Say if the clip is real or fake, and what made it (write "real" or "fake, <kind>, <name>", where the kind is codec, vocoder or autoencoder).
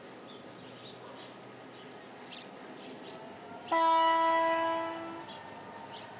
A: real